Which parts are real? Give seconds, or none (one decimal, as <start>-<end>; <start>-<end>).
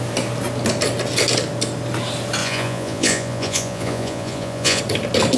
0.0-2.4; 4.8-5.4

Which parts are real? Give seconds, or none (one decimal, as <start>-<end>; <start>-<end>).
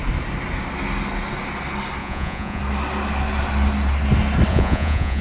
0.0-2.0; 2.6-4.5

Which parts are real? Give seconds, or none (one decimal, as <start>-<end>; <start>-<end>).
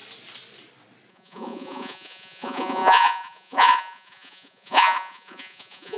0.0-1.1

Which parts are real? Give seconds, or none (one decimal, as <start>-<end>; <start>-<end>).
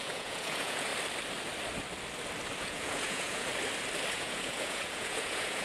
0.9-2.6; 3.5-4.1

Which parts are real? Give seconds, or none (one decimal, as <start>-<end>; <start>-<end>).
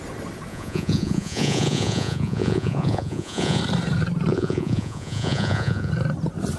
0.0-0.5; 3.6-4.3; 5.9-6.6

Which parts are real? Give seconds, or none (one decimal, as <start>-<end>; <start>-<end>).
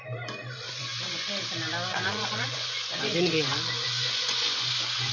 0.0-0.7; 1.5-1.9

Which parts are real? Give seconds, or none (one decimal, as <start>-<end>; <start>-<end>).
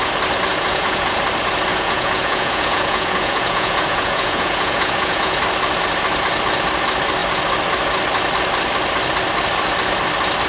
0.0-0.5; 1.2-1.7; 5.4-10.5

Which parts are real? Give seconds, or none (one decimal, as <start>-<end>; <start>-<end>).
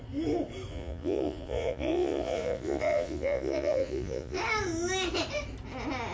0.0-0.7; 4.4-6.1